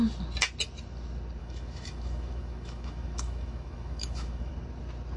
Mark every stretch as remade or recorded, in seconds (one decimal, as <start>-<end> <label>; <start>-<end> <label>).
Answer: 0.0-1.4 recorded; 1.4-4.5 remade; 4.5-5.2 recorded